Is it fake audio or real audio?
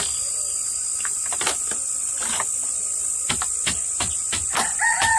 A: real